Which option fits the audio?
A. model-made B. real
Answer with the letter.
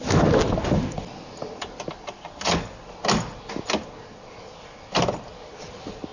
B